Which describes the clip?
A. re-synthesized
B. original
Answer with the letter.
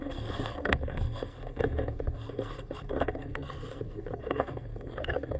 A